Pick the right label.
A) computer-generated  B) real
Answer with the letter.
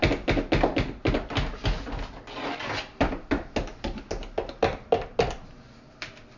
B